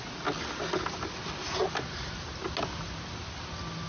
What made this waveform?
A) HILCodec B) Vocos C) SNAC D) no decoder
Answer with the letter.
D